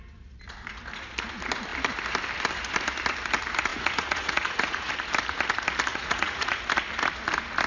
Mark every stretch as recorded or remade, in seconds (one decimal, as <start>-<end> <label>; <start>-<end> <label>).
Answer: 0.0-3.7 recorded; 3.7-4.9 remade; 4.9-5.9 recorded; 5.9-6.6 remade; 6.6-7.7 recorded